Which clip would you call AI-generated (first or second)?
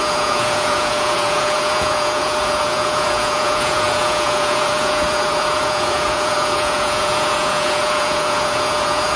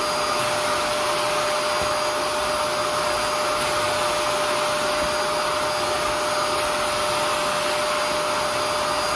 first